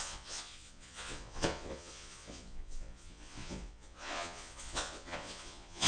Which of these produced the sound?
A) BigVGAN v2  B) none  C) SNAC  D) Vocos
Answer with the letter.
D